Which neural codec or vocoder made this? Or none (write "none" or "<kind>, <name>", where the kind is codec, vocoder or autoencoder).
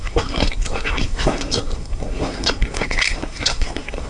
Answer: codec, SNAC